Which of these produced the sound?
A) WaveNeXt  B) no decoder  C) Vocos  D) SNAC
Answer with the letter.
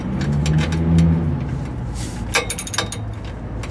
B